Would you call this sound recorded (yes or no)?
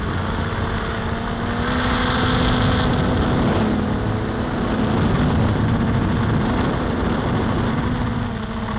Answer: yes